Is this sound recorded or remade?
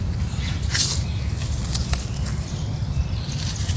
recorded